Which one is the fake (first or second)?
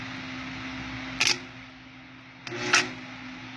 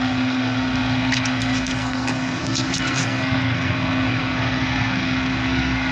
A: second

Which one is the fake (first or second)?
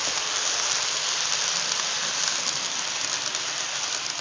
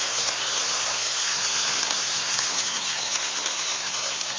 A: second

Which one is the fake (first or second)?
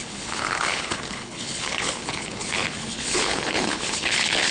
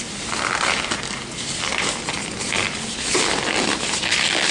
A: first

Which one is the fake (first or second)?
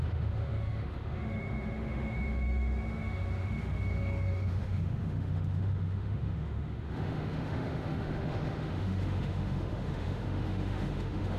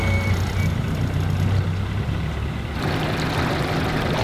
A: first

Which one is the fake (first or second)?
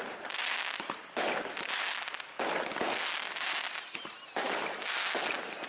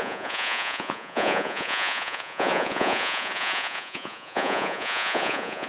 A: second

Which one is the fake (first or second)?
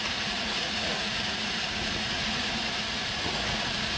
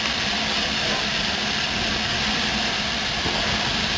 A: first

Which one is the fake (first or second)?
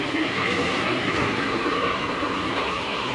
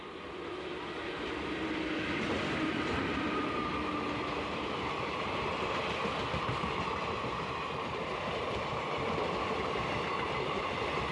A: first